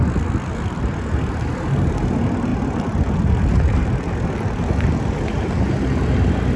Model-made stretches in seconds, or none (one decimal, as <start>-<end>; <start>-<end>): none